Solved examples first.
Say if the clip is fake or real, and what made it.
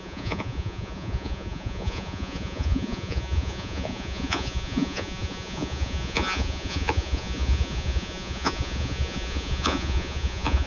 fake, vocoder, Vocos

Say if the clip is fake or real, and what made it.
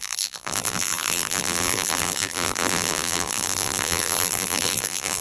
fake, vocoder, BigVGAN v2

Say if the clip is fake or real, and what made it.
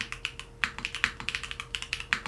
real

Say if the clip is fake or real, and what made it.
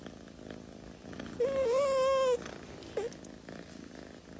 real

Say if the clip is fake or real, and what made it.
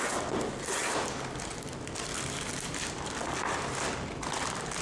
real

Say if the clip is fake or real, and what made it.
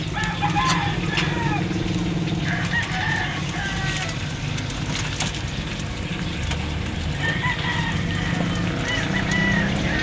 real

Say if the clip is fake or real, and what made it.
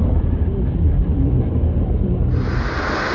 real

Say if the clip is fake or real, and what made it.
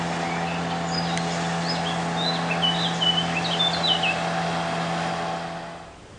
real